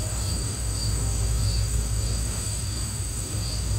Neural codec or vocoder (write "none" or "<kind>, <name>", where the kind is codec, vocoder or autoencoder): codec, DAC